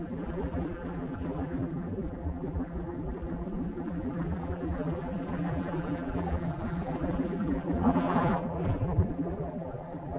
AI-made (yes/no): yes